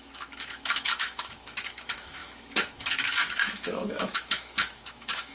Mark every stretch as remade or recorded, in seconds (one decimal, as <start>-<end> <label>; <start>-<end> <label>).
0.0-5.3 remade